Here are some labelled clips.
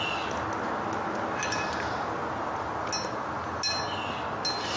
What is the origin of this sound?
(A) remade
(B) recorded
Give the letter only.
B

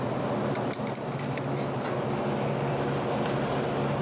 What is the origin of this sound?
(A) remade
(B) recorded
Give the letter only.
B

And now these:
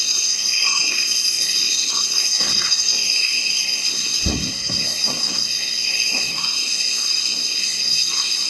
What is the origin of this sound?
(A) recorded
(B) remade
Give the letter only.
B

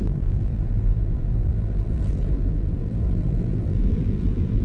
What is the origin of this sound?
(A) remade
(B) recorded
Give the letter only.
A